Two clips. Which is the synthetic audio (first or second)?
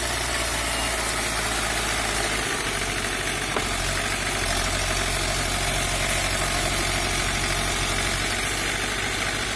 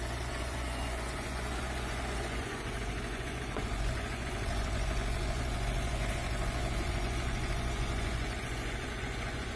second